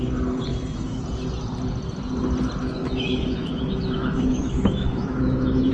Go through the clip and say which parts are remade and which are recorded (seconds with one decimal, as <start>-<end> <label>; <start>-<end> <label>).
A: 0.0-0.5 recorded; 0.5-1.0 remade; 1.0-2.6 recorded; 2.6-5.7 remade